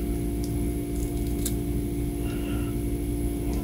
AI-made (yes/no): no